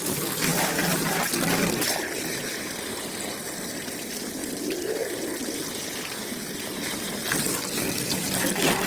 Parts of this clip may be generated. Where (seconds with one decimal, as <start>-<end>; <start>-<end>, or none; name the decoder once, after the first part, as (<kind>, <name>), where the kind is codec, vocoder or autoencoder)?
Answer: 0.5-1.0 (vocoder, BigVGAN v2)